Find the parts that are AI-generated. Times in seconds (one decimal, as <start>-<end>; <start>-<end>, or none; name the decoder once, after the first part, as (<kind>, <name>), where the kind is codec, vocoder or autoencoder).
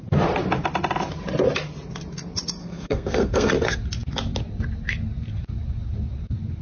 2.6-3.5 (codec, SNAC)